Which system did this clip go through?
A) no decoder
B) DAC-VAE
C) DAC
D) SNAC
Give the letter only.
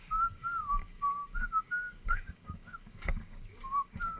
C